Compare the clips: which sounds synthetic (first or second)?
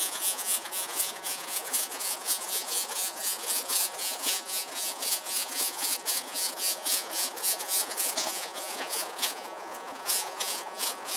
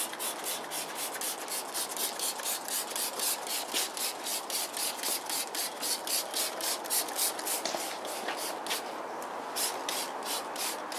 first